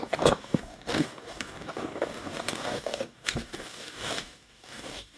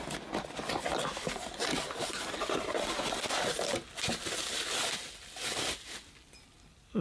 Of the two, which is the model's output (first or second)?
first